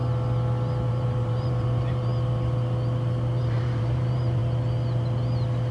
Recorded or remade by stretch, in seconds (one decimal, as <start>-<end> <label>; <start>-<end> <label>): 0.0-0.9 recorded; 0.9-2.1 remade; 2.1-3.4 recorded; 3.4-4.4 remade; 4.4-5.7 recorded

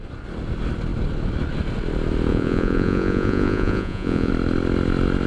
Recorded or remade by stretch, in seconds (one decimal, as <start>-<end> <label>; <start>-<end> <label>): 0.0-2.3 recorded; 2.3-4.3 remade; 4.3-5.3 recorded

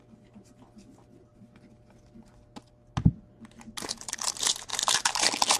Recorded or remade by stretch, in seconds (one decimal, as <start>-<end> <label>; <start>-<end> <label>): 0.0-5.6 recorded

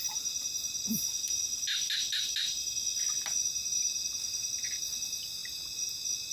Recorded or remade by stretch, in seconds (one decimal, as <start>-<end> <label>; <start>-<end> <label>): 0.0-6.3 recorded